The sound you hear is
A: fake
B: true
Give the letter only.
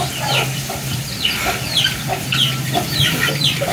B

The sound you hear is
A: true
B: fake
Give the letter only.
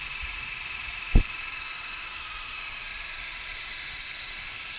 B